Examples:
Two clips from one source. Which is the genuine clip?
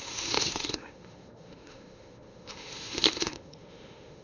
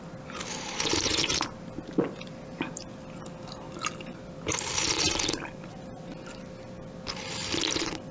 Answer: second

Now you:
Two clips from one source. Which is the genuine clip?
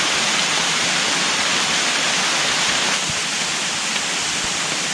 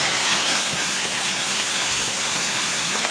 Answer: first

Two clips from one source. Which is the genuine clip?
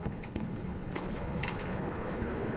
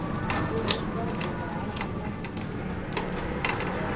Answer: second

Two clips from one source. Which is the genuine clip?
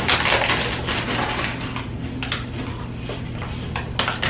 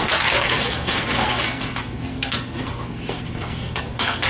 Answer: first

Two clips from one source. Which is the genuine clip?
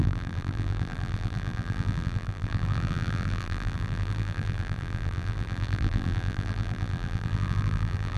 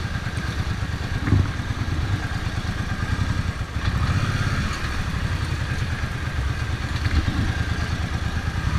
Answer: second